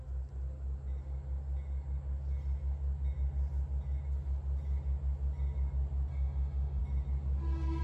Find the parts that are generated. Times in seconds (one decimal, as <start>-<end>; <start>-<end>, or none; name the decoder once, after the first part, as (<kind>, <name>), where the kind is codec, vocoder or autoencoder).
6.1-6.8 (autoencoder, DAC-VAE)